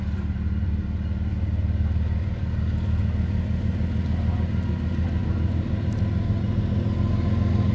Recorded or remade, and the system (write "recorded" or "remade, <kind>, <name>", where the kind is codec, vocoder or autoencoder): recorded